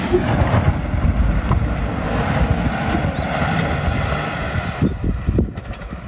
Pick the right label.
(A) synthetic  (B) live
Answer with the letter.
B